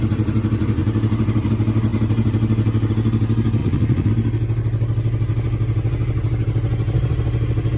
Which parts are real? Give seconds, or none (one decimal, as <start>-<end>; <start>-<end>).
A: 0.0-3.6; 4.1-7.8